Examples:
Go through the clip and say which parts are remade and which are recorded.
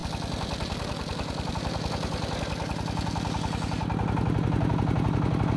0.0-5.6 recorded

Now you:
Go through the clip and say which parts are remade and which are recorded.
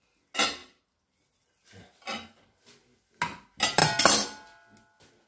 0.0-5.3 recorded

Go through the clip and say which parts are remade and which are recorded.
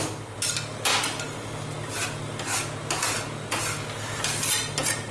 0.0-5.1 recorded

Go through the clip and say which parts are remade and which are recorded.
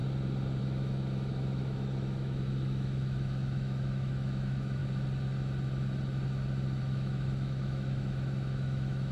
0.0-0.6 recorded; 0.6-4.8 remade; 4.8-6.8 recorded; 6.8-9.1 remade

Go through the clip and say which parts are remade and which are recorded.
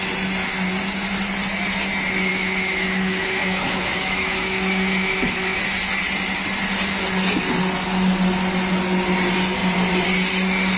0.0-2.3 recorded; 2.3-5.6 remade; 5.6-10.8 recorded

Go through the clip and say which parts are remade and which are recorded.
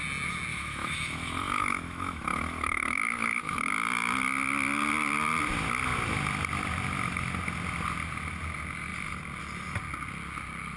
0.0-0.5 recorded; 0.5-3.7 remade; 3.7-10.8 recorded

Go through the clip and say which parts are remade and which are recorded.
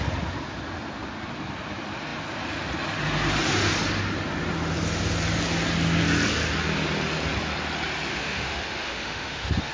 0.0-8.1 recorded; 8.1-9.7 remade